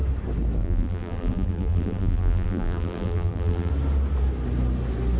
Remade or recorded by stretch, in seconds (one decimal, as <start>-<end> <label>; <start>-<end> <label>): 0.0-0.6 recorded; 0.6-3.7 remade; 3.7-5.2 recorded